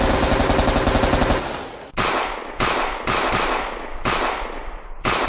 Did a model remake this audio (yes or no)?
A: no